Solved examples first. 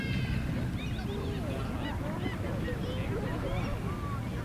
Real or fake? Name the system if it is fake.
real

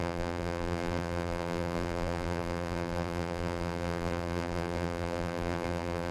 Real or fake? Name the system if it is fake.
fake, vocoder, BigVGAN v2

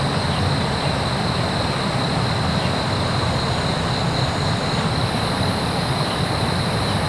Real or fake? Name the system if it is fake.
real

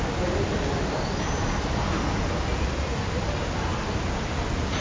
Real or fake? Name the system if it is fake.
real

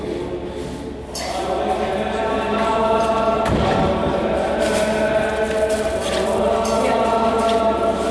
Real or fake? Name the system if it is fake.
real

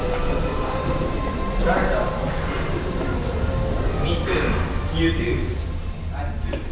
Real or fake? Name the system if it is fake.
fake, vocoder, BigVGAN v2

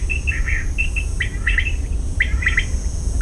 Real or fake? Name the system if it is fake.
real